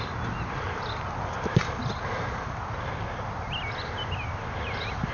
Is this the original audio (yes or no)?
yes